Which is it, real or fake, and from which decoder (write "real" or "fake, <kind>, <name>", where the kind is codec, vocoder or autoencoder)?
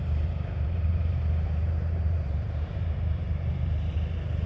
fake, vocoder, BigVGAN v2